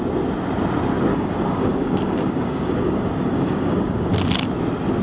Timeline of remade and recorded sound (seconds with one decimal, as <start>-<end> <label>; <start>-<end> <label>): 0.0-1.1 recorded; 1.1-4.1 remade; 4.1-5.0 recorded